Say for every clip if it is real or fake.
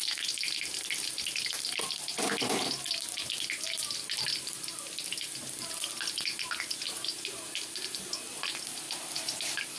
real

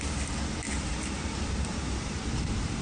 fake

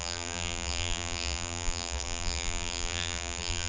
fake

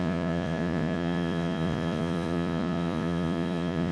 fake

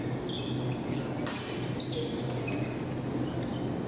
real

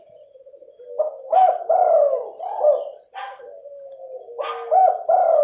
real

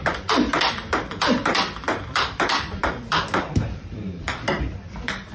fake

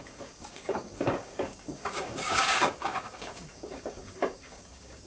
fake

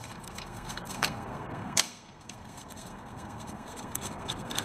fake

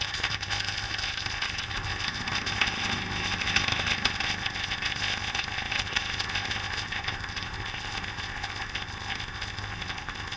fake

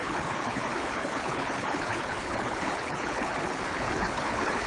fake